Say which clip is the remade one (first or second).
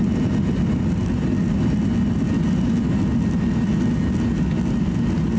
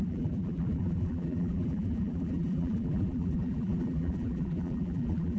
second